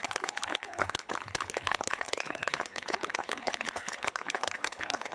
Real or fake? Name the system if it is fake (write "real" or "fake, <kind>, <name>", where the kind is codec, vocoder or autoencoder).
fake, codec, HILCodec